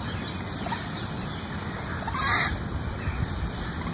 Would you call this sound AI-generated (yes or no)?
yes